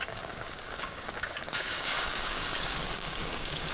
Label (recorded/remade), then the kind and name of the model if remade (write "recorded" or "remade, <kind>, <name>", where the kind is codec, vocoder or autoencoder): remade, codec, DAC